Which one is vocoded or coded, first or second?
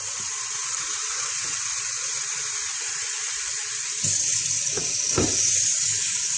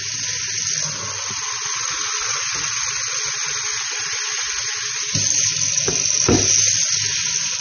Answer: first